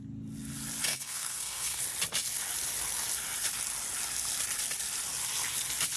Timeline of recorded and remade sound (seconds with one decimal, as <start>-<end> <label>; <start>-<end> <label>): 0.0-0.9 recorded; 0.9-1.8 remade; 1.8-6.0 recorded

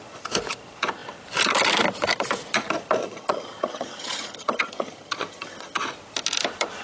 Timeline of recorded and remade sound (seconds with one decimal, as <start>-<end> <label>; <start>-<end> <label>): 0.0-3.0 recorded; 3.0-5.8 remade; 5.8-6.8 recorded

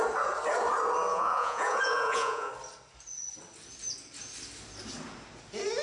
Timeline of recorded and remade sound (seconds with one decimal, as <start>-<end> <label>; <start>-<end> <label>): 0.0-1.1 recorded; 1.1-2.5 remade; 2.5-5.8 recorded

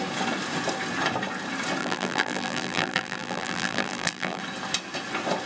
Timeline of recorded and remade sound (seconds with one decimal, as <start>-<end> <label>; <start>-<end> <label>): 0.0-1.8 recorded; 1.8-4.4 remade; 4.4-5.5 recorded